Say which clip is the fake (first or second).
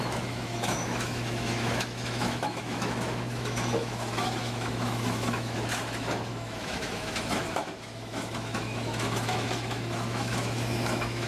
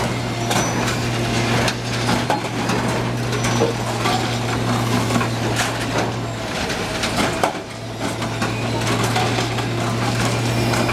first